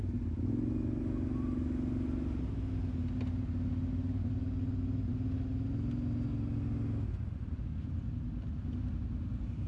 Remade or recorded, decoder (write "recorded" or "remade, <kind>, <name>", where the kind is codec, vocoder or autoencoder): recorded